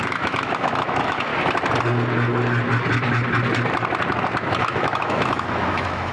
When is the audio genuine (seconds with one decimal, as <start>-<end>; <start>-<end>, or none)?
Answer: 1.3-4.6